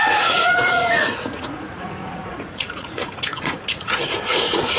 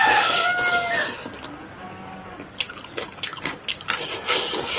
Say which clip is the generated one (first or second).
first